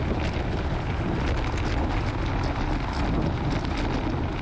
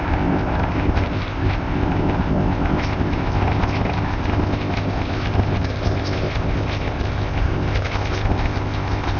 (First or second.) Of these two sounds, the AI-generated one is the second